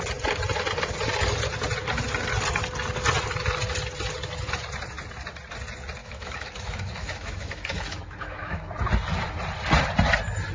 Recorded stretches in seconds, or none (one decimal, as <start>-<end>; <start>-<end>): 0.0-6.0; 8.7-10.5